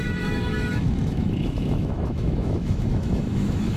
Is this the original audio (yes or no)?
no